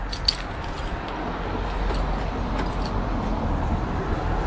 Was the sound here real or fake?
real